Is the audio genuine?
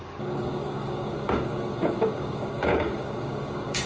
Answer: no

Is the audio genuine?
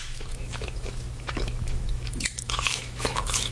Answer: no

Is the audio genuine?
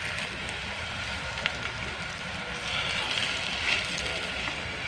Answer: yes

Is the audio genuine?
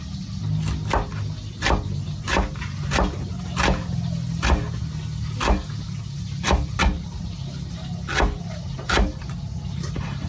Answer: yes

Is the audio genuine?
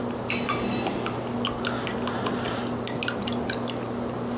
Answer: yes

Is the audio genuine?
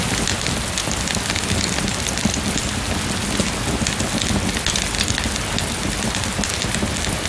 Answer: yes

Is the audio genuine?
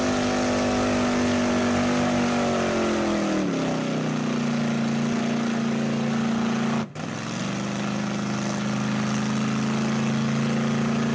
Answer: yes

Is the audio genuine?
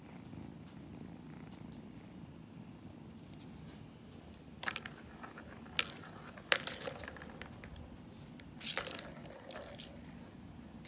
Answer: yes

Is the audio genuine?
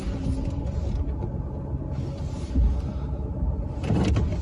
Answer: yes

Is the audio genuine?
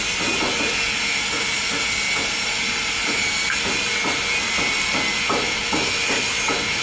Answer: yes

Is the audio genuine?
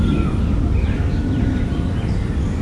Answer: yes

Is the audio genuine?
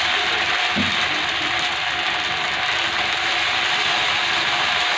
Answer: yes